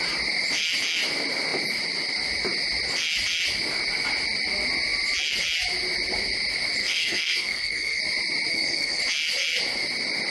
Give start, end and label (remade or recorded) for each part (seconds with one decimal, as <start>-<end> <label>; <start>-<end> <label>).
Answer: 0.0-6.8 recorded; 6.8-8.0 remade; 8.0-8.5 recorded; 8.5-9.0 remade; 9.0-10.3 recorded